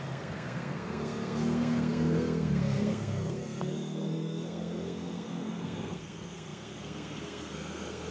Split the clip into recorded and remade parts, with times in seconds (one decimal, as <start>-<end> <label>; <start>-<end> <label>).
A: 0.0-8.1 remade